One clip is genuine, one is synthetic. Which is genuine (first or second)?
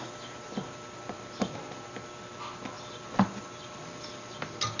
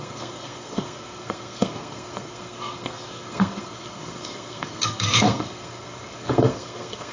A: first